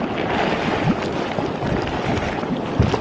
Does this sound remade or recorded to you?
recorded